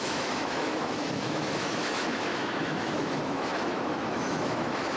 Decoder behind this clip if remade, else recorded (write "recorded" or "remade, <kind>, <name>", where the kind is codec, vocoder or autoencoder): remade, autoencoder, DAC-VAE